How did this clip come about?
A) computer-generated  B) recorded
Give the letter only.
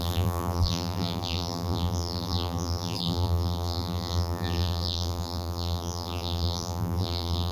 A